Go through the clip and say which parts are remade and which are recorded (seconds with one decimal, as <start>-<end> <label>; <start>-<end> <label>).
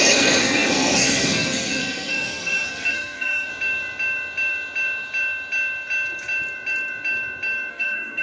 0.0-3.5 remade; 3.5-7.7 recorded; 7.7-8.2 remade